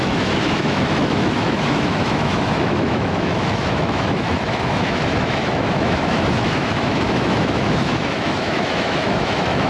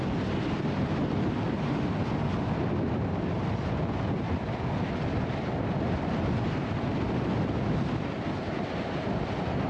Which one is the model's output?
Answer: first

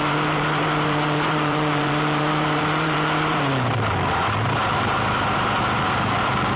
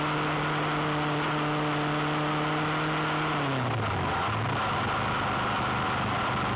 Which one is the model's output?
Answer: first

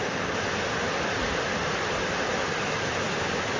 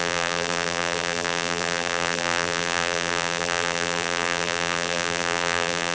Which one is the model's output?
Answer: second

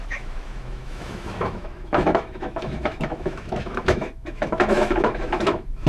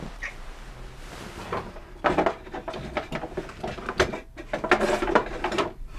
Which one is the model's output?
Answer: first